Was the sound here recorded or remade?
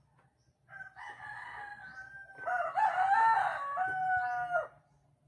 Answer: recorded